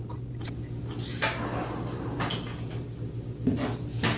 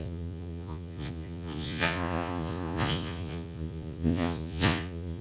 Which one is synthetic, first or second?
second